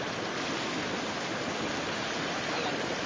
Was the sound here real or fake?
real